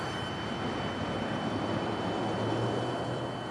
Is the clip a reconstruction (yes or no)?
yes